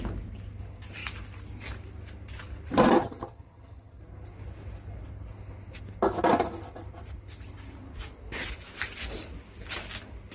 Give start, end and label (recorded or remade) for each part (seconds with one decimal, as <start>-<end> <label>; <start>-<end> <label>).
0.0-3.0 recorded; 3.0-4.0 remade; 4.0-10.3 recorded